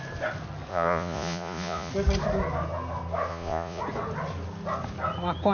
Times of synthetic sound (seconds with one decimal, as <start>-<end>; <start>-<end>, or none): 0.7-1.9; 3.3-3.8